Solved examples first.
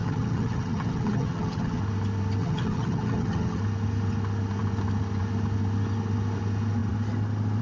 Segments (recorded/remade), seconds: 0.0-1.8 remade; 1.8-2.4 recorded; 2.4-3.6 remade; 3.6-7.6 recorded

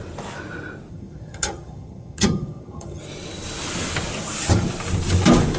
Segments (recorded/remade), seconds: 0.0-0.9 recorded; 0.9-3.0 remade; 3.0-5.6 recorded

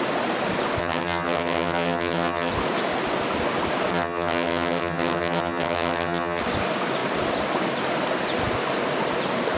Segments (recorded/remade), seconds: 0.0-0.8 recorded; 0.8-2.5 remade; 2.5-3.9 recorded; 3.9-6.4 remade; 6.4-9.6 recorded

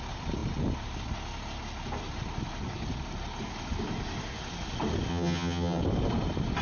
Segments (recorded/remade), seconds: 0.0-5.1 recorded; 5.1-5.8 remade; 5.8-6.6 recorded

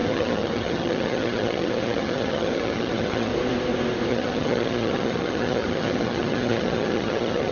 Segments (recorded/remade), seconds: 0.0-3.3 remade; 3.3-4.1 recorded; 4.1-7.5 remade